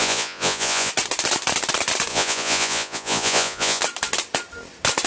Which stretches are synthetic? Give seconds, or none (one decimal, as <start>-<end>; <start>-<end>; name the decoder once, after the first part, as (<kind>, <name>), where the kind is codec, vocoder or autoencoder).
0.0-0.9 (vocoder, Vocos); 2.1-3.8